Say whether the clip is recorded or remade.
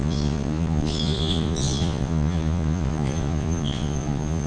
remade